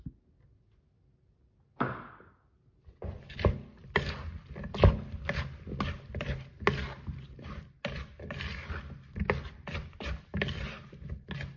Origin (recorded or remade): recorded